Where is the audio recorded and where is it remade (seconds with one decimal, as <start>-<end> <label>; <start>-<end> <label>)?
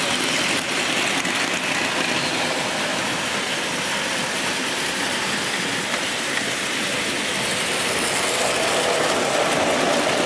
0.0-10.3 recorded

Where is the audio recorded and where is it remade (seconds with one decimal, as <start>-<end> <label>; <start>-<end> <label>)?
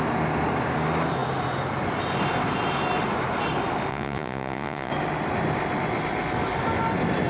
0.0-3.9 recorded; 3.9-4.9 remade; 4.9-7.3 recorded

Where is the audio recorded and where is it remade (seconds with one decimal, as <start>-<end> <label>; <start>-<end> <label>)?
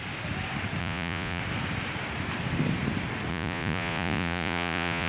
0.0-0.8 recorded; 0.8-1.4 remade; 1.4-3.3 recorded; 3.3-5.1 remade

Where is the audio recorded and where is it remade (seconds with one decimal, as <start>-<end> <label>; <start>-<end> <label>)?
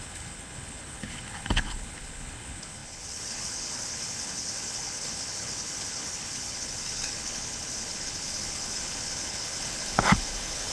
0.0-10.7 remade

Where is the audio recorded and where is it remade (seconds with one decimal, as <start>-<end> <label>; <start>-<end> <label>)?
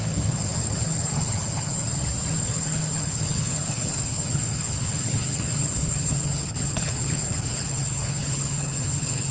0.0-1.9 remade; 1.9-2.4 recorded; 2.4-9.3 remade